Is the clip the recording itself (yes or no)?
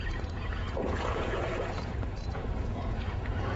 no